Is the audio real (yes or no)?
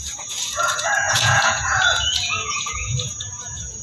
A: no